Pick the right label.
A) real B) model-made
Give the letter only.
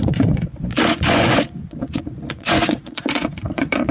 B